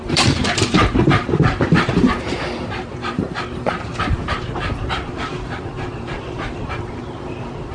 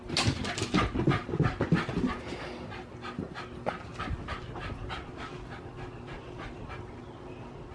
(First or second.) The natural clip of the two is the second